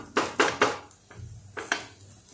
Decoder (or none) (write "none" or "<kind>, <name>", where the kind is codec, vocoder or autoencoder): none